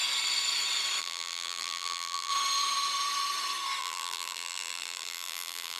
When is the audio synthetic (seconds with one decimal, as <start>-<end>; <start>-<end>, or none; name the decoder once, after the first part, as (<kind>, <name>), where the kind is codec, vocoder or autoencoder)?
1.0-2.3 (vocoder, BigVGAN v2); 3.8-5.8